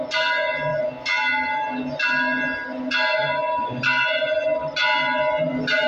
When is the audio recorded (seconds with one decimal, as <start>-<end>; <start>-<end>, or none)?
0.0-5.9

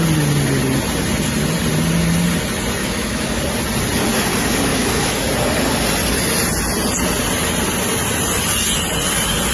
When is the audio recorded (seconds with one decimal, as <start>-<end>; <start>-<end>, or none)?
0.0-2.8; 3.4-4.7; 5.2-9.5

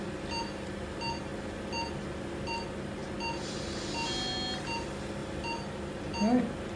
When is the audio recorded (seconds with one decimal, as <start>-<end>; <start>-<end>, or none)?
0.0-6.8

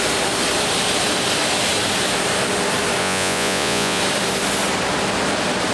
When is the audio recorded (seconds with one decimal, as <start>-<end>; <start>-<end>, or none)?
0.0-3.0; 4.0-5.7

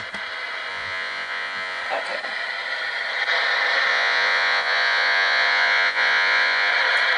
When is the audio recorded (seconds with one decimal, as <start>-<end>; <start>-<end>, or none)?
0.0-0.7; 1.8-3.9; 6.7-7.2

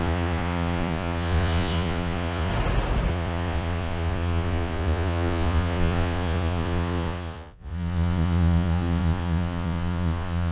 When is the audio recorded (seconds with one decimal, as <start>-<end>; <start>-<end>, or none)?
2.5-3.1

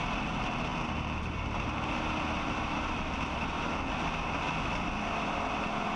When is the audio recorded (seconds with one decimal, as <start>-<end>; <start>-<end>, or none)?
0.0-6.0

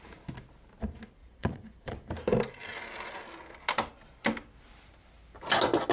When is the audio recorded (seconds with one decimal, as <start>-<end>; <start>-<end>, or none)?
0.0-1.2; 2.1-5.9